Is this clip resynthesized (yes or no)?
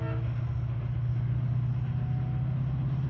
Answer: no